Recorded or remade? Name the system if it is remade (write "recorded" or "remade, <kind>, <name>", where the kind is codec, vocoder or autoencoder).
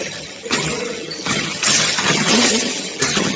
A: remade, vocoder, HiFi-GAN